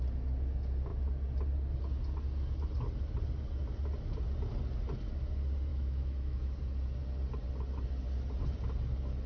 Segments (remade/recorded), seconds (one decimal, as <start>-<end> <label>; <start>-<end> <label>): 0.0-5.7 recorded; 5.7-6.6 remade; 6.6-9.3 recorded